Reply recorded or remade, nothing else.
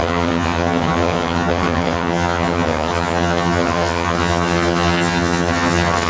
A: remade